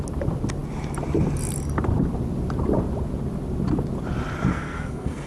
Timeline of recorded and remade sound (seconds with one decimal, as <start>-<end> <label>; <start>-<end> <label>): 0.0-4.5 recorded; 4.5-5.3 remade